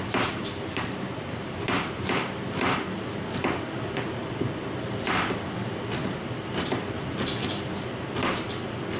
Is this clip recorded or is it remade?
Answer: remade